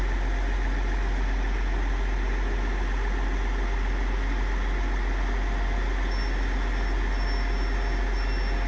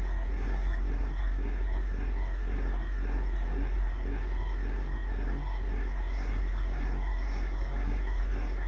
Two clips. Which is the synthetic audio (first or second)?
second